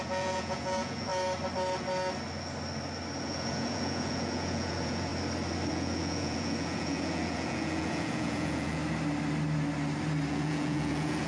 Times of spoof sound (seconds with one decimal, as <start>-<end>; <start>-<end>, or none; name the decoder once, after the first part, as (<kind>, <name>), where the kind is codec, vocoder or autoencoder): 0.0-1.1 (vocoder, Vocos); 3.2-5.1; 5.7-8.8; 10.3-11.3

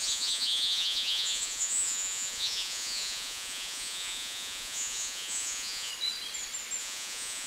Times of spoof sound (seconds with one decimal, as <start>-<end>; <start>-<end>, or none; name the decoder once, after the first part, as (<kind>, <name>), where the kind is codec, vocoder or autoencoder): 0.0-5.9 (vocoder, Vocos); 6.8-7.5

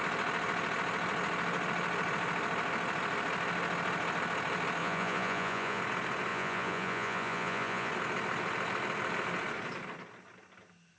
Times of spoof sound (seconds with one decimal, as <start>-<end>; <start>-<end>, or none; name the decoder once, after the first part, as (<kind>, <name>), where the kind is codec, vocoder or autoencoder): 4.8-5.8 (vocoder, Vocos); 6.3-7.9

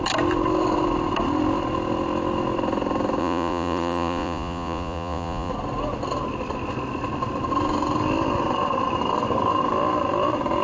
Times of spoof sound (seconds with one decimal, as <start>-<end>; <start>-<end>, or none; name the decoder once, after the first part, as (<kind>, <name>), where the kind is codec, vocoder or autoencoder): 3.2-5.5 (vocoder, Vocos)